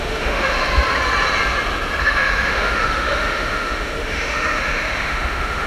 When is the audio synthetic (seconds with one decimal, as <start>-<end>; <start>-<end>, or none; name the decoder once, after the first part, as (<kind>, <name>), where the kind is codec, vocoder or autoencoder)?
0.0-0.7 (autoencoder, DAC-VAE); 2.0-5.7